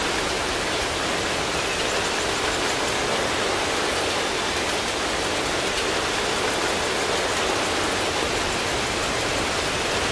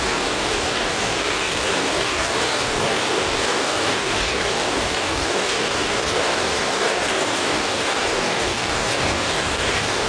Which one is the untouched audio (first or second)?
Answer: first